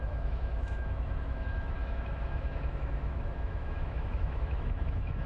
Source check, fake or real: fake